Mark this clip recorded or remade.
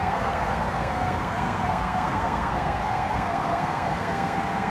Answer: remade